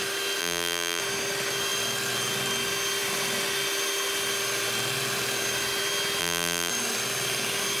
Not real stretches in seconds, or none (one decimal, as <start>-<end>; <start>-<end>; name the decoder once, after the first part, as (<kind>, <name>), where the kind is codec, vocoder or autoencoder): 0.4-1.0 (vocoder, BigVGAN v2); 6.2-6.7